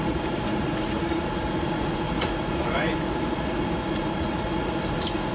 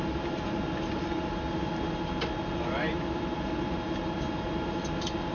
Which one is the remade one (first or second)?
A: first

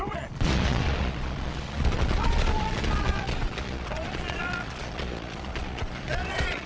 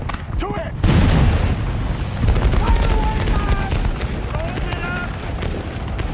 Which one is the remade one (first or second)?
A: first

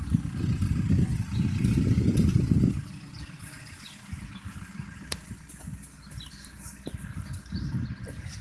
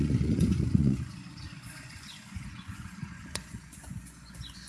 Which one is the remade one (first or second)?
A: second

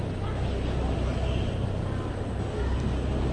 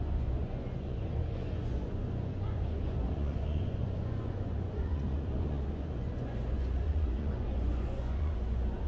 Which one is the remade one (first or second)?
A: second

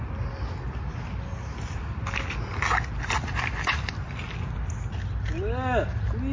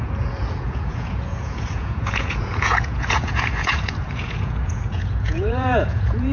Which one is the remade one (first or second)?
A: second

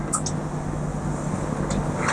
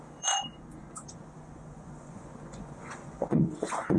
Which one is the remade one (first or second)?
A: second